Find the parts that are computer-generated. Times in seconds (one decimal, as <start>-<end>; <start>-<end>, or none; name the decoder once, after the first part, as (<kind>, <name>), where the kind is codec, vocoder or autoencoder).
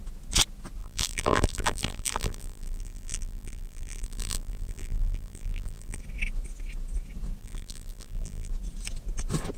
0.8-6.0 (vocoder, BigVGAN v2); 7.4-8.5